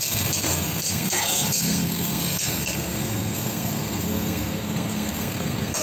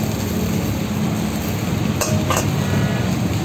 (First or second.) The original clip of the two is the second